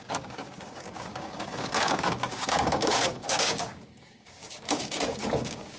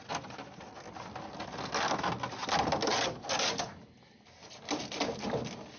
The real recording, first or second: second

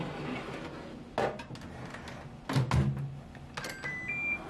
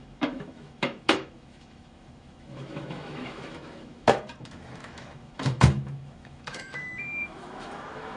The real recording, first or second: first